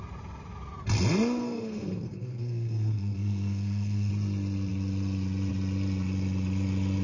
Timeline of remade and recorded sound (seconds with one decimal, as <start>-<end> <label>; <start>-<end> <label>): 0.0-1.4 recorded; 1.4-4.1 remade; 4.1-7.0 recorded